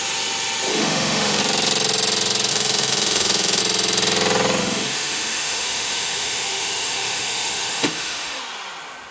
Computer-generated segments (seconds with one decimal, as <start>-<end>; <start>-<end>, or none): 0.7-1.4; 2.5-3.6; 4.6-8.4